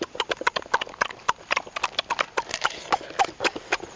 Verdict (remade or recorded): recorded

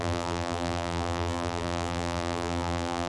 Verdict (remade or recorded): remade